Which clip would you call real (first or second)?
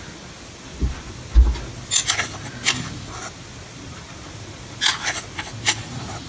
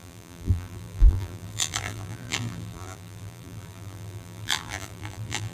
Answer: first